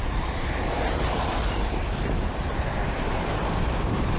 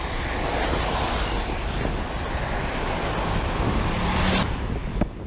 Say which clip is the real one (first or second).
second